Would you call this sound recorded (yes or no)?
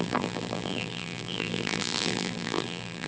no